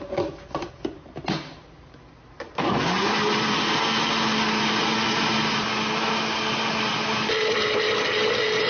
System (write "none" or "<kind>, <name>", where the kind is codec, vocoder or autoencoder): none